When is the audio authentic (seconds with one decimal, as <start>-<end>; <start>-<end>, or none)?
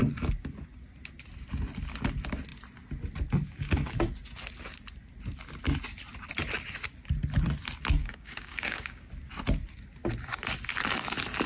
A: 0.0-8.0; 9.1-11.5